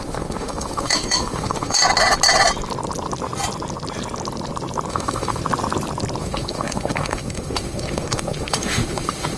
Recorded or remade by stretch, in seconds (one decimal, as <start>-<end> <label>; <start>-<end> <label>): 0.0-1.8 remade; 1.8-4.9 recorded; 4.9-5.4 remade; 5.4-6.2 recorded; 6.2-9.4 remade